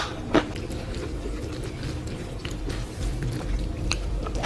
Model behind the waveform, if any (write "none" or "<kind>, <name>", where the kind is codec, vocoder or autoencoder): vocoder, BigVGAN v2